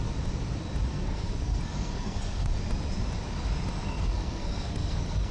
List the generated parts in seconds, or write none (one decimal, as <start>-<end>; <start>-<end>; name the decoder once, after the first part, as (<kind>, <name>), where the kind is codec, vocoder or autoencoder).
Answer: 0.9-2.5 (codec, SNAC); 3.8-5.3